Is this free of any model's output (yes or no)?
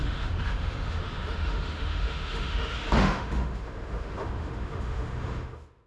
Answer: no